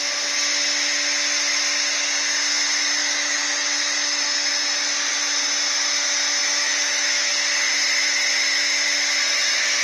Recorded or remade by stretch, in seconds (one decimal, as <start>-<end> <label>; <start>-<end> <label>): 0.0-3.0 recorded; 3.0-4.5 remade; 4.5-6.4 recorded; 6.4-7.3 remade; 7.3-9.8 recorded

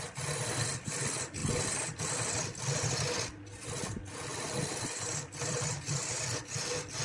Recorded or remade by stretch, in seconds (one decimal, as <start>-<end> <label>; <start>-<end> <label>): 0.0-1.4 recorded; 1.4-2.0 remade; 2.0-4.3 recorded; 4.3-6.4 remade; 6.4-7.0 recorded

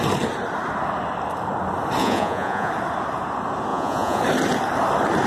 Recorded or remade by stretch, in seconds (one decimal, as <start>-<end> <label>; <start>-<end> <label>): 0.0-2.0 recorded; 2.0-2.7 remade; 2.7-3.7 recorded; 3.7-4.2 remade; 4.2-5.3 recorded

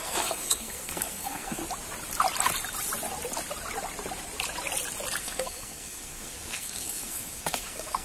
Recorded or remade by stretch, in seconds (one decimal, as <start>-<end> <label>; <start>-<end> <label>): 0.0-1.6 remade; 1.6-5.2 recorded; 5.2-8.0 remade

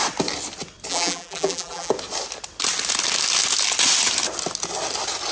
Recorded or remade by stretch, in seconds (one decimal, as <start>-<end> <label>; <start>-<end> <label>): 0.0-0.9 recorded; 0.9-1.9 remade; 1.9-5.3 recorded